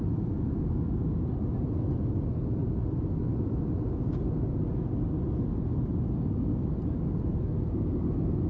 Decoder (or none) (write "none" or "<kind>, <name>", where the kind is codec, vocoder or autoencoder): none